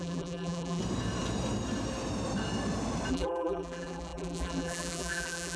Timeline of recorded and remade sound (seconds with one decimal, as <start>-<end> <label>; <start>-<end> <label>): 0.0-0.8 remade; 0.8-3.1 recorded; 3.1-5.6 remade